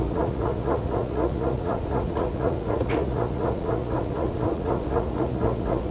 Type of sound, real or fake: fake